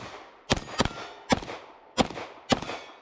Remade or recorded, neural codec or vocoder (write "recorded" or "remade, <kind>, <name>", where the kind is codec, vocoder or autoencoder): recorded